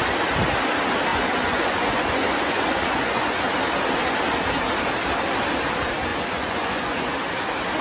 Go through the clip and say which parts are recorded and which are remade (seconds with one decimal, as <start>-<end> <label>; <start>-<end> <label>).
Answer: 0.0-1.1 recorded; 1.1-3.6 remade; 3.6-6.1 recorded; 6.1-7.1 remade; 7.1-7.8 recorded